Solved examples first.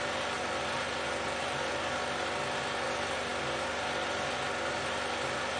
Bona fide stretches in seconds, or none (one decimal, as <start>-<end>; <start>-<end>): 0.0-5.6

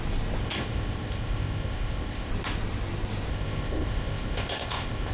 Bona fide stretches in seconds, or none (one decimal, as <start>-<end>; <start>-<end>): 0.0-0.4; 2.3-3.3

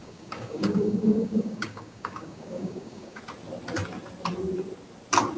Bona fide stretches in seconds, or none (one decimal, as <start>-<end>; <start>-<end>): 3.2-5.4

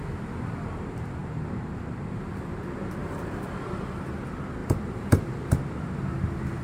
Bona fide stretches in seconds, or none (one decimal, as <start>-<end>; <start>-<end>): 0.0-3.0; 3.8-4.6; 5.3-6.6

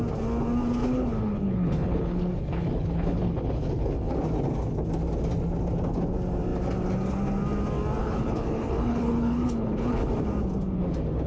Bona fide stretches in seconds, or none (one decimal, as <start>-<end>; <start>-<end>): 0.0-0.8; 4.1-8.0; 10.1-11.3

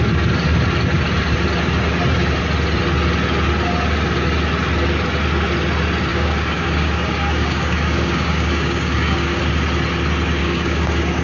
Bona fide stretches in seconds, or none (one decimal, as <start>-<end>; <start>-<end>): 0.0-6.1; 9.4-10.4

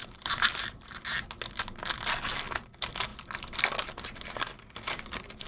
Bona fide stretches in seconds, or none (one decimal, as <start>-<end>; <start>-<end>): 0.9-5.5

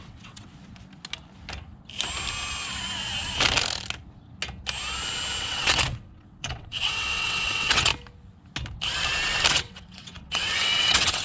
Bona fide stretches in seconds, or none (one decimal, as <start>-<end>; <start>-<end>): 0.5-5.4; 7.9-9.5